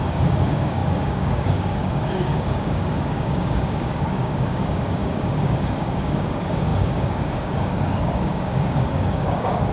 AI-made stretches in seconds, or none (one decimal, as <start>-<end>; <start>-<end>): 0.0-9.7